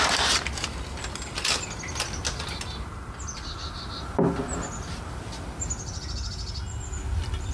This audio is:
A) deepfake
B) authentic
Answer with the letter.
B